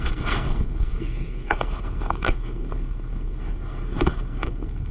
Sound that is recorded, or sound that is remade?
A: remade